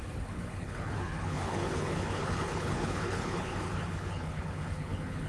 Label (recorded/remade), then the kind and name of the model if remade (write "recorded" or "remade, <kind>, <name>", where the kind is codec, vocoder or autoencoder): remade, codec, HILCodec